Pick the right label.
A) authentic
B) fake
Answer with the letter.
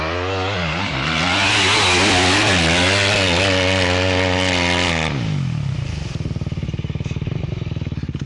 A